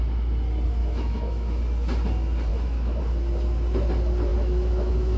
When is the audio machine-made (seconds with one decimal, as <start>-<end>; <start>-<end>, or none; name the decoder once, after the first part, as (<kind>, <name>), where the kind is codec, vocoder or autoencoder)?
0.8-1.6 (autoencoder, DAC-VAE); 2.5-3.0; 4.3-5.2